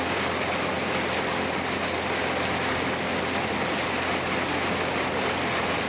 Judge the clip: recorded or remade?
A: recorded